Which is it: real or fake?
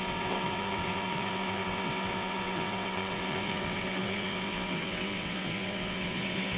fake